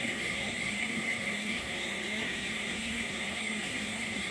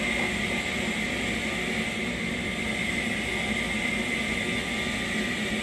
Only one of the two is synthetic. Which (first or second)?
first